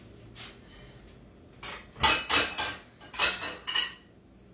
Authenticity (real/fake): real